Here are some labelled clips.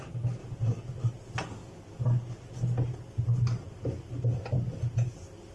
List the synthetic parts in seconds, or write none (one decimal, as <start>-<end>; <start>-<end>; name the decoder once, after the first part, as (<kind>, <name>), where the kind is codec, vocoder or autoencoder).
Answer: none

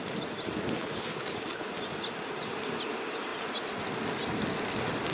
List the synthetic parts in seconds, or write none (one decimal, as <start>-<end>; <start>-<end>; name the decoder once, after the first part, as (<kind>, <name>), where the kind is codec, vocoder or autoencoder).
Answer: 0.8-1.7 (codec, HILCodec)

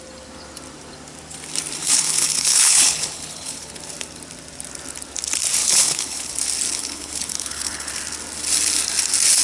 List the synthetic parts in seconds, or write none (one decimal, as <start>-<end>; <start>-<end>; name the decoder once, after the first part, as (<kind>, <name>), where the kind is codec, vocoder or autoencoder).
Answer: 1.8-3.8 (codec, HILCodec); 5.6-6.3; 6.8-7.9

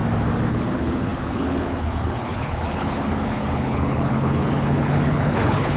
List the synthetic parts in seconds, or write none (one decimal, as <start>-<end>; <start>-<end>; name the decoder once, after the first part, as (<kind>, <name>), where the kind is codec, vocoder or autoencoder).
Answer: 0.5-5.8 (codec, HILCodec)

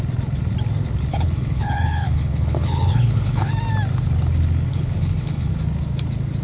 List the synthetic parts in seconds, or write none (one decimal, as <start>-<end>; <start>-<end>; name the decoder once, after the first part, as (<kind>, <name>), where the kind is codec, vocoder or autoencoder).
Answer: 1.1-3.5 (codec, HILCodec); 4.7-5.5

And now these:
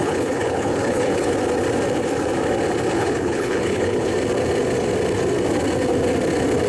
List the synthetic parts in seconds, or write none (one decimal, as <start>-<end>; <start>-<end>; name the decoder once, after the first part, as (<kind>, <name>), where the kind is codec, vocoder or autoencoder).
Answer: 0.0-1.3 (codec, HILCodec); 2.9-4.1

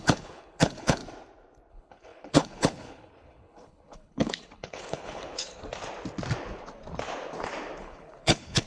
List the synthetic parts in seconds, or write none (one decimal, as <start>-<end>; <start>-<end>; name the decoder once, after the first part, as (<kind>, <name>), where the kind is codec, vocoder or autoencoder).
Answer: 0.0-1.0 (codec, HILCodec); 1.7-5.6; 7.8-8.7

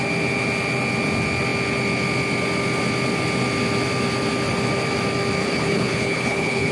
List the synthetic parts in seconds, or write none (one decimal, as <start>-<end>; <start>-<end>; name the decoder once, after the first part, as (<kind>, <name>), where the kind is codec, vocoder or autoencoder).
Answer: 5.4-6.7 (codec, HILCodec)